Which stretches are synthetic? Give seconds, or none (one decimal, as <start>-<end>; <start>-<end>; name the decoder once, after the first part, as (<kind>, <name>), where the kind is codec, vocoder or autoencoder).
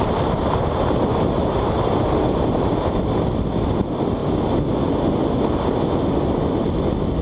none